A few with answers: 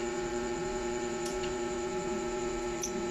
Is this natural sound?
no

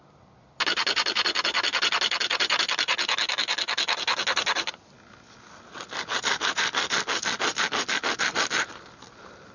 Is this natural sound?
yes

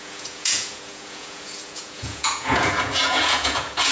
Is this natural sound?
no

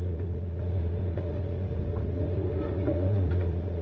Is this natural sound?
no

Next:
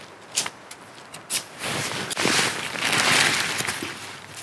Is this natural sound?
yes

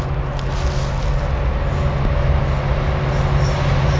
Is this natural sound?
yes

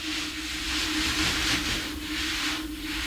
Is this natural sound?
yes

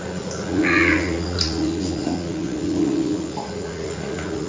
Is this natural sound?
no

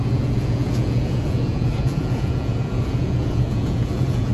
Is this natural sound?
no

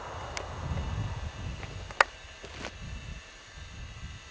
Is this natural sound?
yes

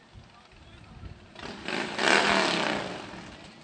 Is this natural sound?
yes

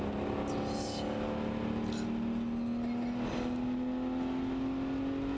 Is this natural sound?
yes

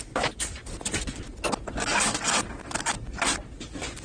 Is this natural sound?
yes